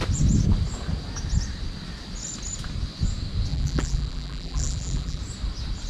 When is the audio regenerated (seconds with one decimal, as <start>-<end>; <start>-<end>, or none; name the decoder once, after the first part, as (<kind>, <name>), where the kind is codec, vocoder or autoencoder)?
3.5-5.2 (vocoder, BigVGAN v2)